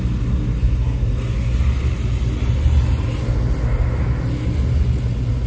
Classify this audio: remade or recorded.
recorded